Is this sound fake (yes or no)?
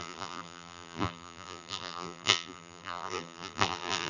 yes